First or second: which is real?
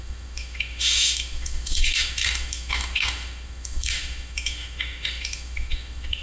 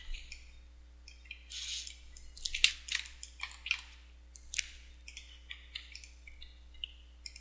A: second